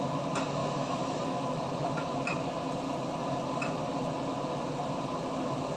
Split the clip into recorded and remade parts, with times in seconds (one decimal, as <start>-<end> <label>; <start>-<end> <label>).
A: 0.0-0.6 recorded; 0.6-1.9 remade; 1.9-5.8 recorded

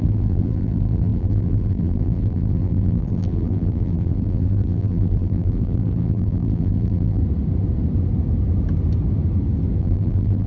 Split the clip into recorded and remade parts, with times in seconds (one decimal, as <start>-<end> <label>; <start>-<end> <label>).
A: 0.0-7.2 remade; 7.2-9.8 recorded; 9.8-10.5 remade

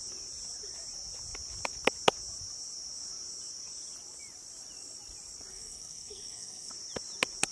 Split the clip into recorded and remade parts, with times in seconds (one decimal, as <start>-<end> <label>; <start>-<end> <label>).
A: 0.0-5.5 recorded; 5.5-6.7 remade; 6.7-7.5 recorded